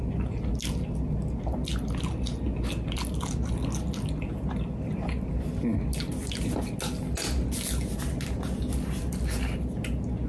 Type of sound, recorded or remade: recorded